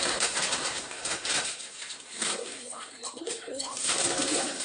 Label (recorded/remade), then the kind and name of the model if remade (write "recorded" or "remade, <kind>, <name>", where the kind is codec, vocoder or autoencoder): remade, codec, SNAC